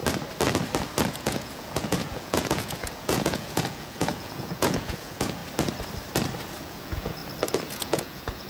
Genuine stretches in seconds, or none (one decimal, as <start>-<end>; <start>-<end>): 0.0-1.1; 5.4-6.6; 7.2-7.7